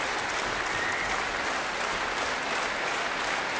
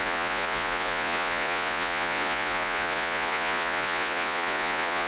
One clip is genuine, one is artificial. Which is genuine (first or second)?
first